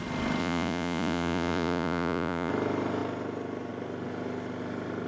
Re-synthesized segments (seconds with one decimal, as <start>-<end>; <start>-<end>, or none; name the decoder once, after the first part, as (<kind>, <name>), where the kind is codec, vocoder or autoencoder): 0.4-2.5 (vocoder, Vocos)